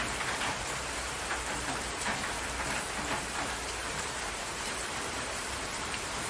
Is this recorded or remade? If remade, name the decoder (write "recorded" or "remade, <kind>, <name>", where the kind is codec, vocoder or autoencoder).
remade, vocoder, BigVGAN v2